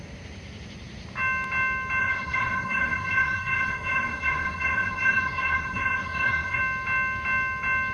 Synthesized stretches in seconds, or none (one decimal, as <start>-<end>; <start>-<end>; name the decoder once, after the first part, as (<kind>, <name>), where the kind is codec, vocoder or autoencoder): 2.0-6.6 (codec, SNAC)